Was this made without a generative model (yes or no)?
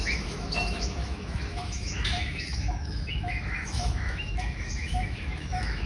no